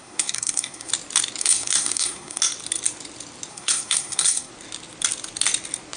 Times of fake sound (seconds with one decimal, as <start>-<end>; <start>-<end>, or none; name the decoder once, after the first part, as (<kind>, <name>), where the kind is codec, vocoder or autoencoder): 0.0-0.9 (codec, SNAC); 1.4-2.4; 3.5-4.5